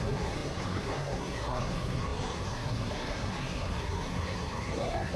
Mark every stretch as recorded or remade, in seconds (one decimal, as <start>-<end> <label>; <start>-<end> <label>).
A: 0.0-5.2 remade